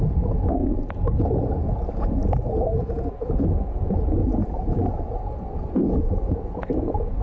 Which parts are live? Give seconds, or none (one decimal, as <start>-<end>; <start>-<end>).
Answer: 2.2-2.8